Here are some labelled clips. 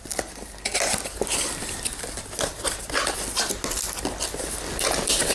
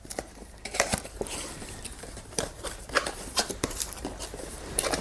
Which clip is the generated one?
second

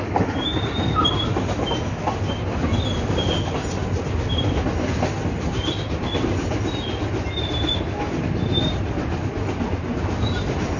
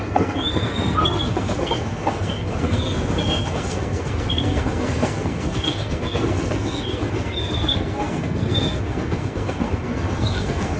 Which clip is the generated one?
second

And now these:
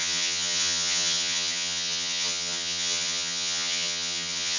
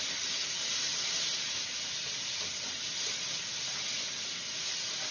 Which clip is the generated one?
first